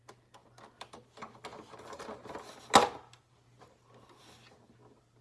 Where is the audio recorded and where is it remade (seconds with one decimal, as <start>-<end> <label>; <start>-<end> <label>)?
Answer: 0.0-5.2 recorded